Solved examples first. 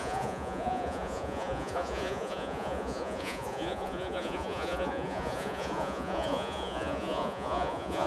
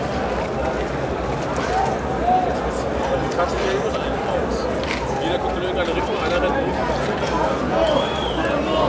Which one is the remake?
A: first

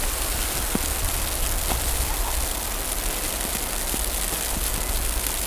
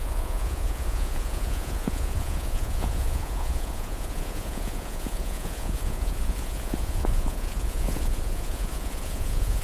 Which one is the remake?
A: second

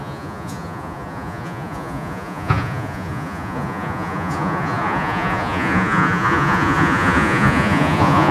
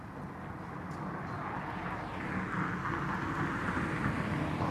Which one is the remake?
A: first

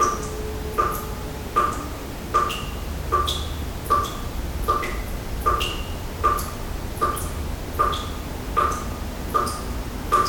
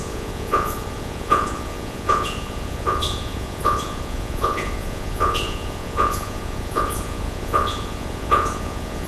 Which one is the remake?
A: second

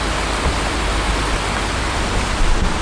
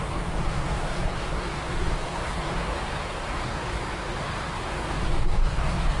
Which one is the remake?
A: second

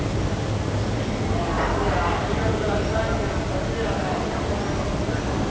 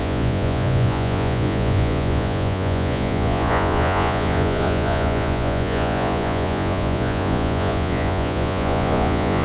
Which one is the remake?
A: second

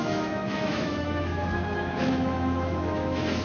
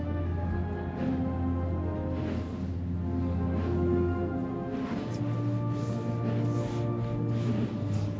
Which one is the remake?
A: first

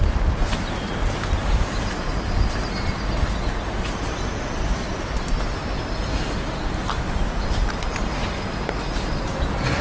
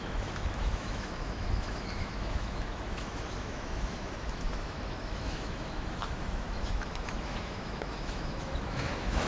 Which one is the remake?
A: second